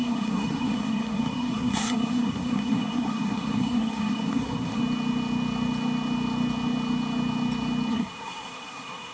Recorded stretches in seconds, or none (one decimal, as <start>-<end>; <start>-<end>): 4.8-7.9